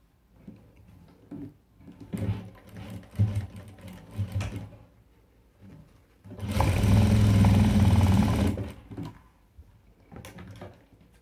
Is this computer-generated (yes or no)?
no